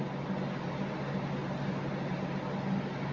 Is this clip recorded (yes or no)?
yes